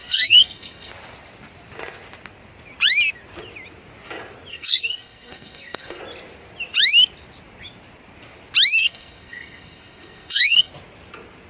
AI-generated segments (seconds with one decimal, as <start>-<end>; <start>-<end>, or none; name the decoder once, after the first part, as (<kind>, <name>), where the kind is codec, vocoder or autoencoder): 0.0-0.9 (codec, SNAC); 4.5-6.0; 8.8-10.7